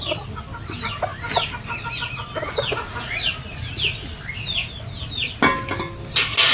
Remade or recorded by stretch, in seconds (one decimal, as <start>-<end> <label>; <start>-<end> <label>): 0.0-6.5 recorded